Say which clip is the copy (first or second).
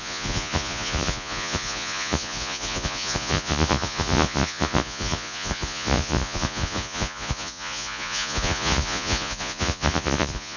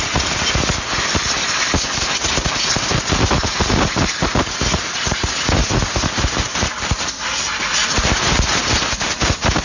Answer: first